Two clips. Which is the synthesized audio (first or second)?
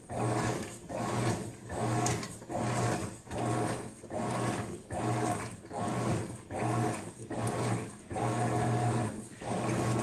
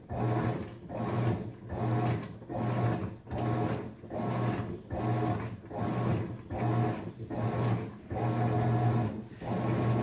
first